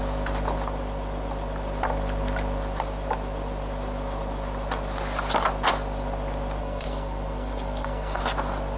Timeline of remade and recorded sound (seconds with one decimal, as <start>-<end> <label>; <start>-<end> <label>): 0.0-6.6 recorded; 6.6-8.2 remade; 8.2-8.8 recorded